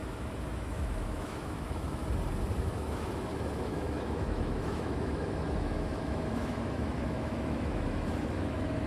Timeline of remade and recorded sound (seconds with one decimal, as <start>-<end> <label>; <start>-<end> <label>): 0.0-2.0 remade; 2.0-2.6 recorded; 2.6-8.9 remade